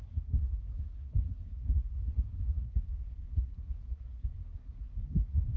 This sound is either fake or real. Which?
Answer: fake